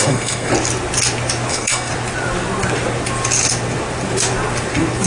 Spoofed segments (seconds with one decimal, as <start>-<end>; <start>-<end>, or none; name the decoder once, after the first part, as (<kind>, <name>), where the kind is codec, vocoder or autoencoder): 0.0-0.5 (codec, SNAC); 1.5-1.9